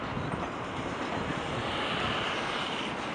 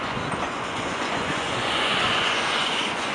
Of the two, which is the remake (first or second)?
second